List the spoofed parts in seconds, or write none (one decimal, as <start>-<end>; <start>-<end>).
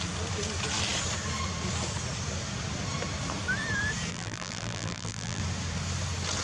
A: 4.1-5.4